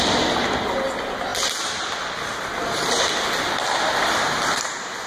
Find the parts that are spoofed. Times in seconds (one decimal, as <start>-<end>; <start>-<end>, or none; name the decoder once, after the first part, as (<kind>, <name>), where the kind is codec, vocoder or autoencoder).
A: none

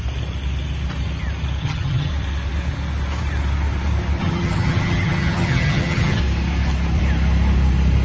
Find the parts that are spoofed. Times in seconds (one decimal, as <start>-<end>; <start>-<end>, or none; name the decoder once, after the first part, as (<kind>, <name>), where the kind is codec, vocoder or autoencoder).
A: 1.6-2.1 (vocoder, HiFi-GAN); 4.2-6.2

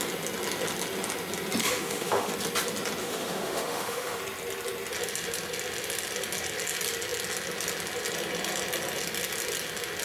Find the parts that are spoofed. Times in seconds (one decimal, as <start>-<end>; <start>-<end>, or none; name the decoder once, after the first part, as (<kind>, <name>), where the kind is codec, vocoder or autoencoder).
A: 1.6-2.3 (autoencoder, DAC-VAE); 3.0-4.2

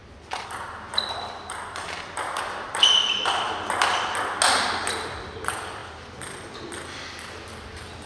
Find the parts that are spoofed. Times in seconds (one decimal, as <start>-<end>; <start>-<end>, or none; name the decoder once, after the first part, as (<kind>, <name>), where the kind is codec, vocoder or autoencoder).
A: 0.0-3.7 (vocoder, BigVGAN v2); 5.8-6.5

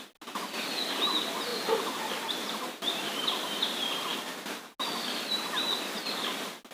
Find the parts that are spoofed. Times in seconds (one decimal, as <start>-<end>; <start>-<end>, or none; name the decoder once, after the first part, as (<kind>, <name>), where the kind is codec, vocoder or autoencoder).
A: none

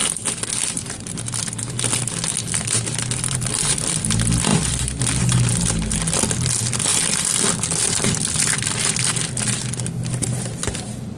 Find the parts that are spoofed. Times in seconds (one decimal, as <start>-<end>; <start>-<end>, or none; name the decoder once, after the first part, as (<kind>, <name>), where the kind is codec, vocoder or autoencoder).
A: 0.0-1.0 (vocoder, BigVGAN v2); 2.4-4.0; 4.5-5.0; 6.9-8.1

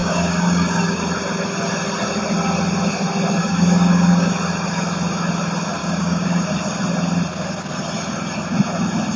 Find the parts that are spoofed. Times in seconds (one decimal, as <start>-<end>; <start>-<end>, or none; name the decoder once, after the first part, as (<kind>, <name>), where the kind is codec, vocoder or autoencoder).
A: 0.0-1.0 (codec, DAC); 3.4-4.3; 5.8-6.5

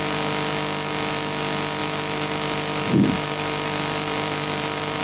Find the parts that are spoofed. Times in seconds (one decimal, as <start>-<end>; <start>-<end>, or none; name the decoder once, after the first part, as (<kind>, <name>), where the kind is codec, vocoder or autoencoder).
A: 1.8-5.0 (vocoder, BigVGAN v2)